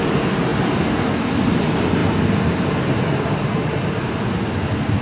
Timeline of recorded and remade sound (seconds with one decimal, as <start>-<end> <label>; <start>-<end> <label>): 0.0-5.0 recorded